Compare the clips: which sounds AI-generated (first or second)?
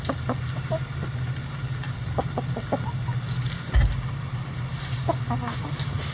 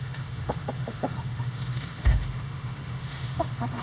second